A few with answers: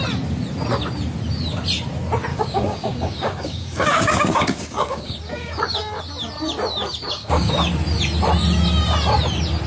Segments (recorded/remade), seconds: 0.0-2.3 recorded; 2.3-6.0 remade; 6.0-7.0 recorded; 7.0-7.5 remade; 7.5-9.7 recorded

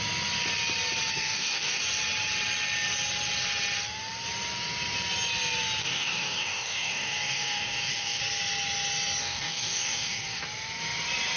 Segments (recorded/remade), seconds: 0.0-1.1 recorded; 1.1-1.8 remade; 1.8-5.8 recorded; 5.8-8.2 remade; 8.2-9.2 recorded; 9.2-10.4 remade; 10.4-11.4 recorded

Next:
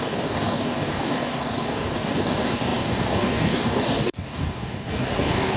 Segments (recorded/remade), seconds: 0.0-5.6 remade

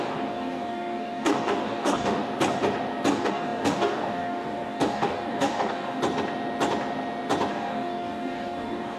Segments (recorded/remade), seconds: 0.0-2.2 remade; 2.2-3.1 recorded; 3.1-6.0 remade; 6.0-7.5 recorded; 7.5-9.0 remade

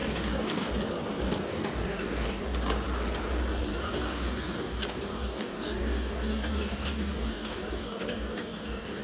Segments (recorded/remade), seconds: 0.0-0.7 remade; 0.7-1.4 recorded; 1.4-2.4 remade; 2.4-3.7 recorded; 3.7-9.0 remade